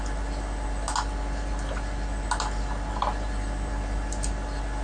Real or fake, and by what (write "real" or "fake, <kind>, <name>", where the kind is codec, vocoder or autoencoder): real